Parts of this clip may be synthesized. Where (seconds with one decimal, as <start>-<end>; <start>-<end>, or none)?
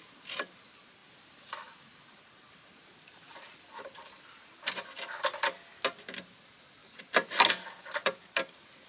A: none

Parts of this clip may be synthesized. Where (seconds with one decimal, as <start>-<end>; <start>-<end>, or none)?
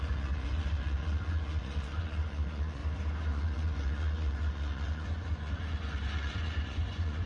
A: 0.0-2.8; 3.3-7.3